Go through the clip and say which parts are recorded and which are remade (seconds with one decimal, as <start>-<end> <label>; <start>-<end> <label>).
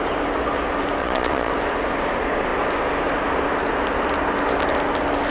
0.0-1.0 recorded; 1.0-1.5 remade; 1.5-5.3 recorded